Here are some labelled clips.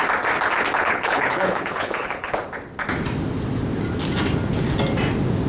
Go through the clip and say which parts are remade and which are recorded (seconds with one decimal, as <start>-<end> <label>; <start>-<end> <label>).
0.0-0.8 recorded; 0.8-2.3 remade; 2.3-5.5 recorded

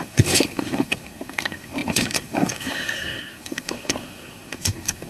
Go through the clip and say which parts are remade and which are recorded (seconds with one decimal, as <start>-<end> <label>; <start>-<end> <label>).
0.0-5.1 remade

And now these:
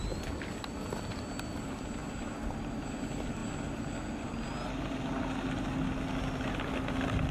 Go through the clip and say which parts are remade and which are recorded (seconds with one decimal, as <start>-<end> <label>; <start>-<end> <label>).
0.0-7.3 recorded

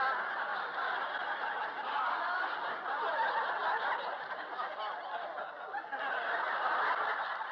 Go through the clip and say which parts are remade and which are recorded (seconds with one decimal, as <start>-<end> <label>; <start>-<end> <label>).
0.0-7.5 recorded